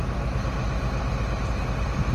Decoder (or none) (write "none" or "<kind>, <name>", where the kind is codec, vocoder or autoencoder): none